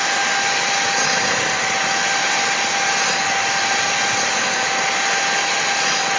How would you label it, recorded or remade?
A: recorded